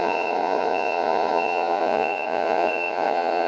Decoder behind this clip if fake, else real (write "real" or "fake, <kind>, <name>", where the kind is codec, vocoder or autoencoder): fake, vocoder, Vocos